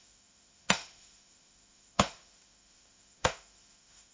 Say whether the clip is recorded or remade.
remade